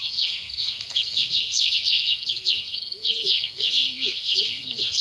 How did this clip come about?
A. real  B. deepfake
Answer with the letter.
B